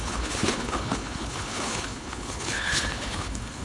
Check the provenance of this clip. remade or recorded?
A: remade